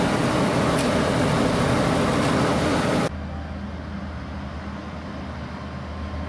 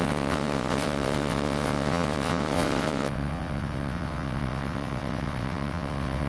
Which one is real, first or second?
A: first